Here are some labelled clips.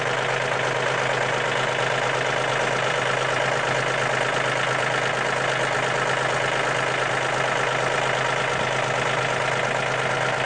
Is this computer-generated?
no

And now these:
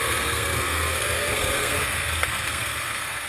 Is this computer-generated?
yes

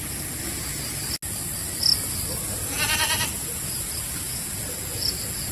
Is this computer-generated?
no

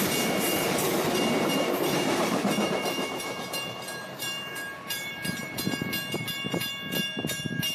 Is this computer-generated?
yes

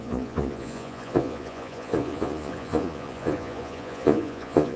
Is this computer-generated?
yes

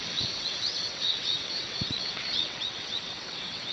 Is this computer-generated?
yes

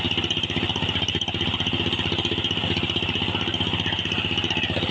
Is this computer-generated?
no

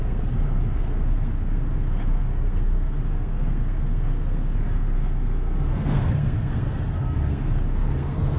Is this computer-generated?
yes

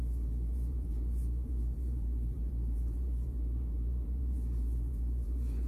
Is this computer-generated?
yes